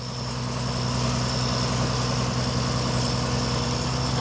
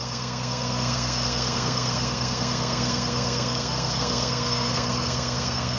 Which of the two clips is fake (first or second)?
second